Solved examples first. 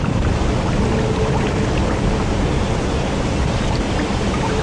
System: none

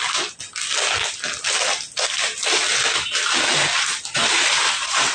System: none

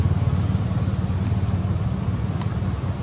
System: none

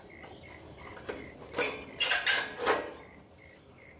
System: vocoder, BigVGAN v2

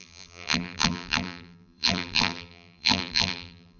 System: vocoder, BigVGAN v2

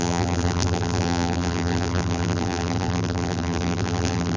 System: vocoder, BigVGAN v2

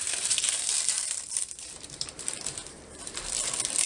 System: vocoder, BigVGAN v2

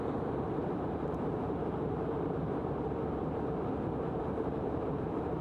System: vocoder, BigVGAN v2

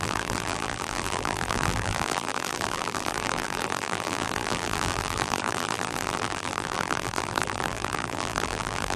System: vocoder, BigVGAN v2